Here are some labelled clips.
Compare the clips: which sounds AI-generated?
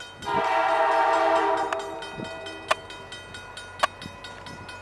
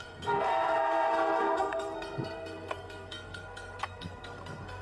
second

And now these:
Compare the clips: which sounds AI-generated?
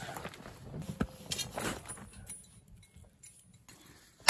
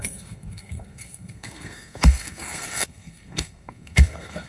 second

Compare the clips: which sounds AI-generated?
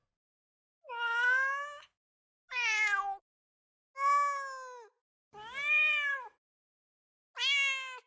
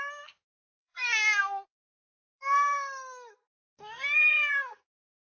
second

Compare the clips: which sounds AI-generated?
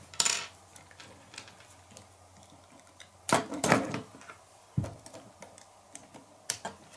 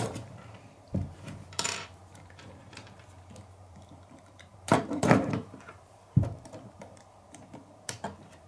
second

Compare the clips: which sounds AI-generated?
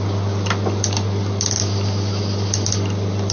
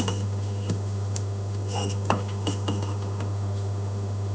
second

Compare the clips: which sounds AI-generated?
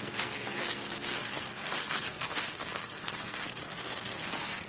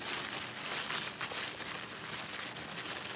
first